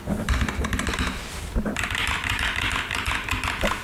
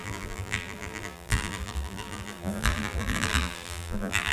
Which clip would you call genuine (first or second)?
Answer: first